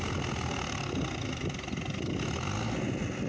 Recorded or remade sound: recorded